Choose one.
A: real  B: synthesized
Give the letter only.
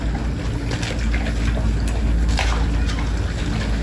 A